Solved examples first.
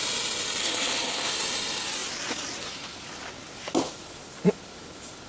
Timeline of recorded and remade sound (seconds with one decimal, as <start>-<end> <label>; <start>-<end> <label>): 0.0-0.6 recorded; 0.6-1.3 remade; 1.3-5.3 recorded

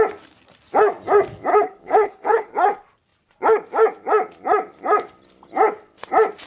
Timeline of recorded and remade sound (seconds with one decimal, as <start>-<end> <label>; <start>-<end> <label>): 0.0-1.5 recorded; 1.5-2.5 remade; 2.5-6.5 recorded

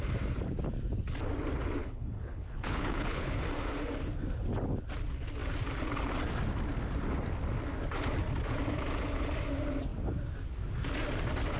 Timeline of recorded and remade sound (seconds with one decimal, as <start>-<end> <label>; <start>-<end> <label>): 0.0-1.8 recorded; 1.8-3.4 remade; 3.4-11.6 recorded

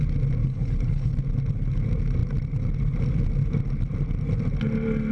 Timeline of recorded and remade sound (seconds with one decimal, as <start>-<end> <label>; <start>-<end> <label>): 0.0-0.4 recorded; 0.4-1.1 remade; 1.1-5.1 recorded

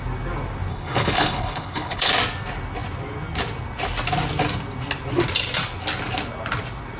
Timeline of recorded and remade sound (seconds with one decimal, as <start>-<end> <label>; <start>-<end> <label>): 0.0-0.7 recorded; 0.7-2.1 remade; 2.1-7.0 recorded